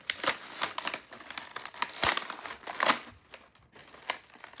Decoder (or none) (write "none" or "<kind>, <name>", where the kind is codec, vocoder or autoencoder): none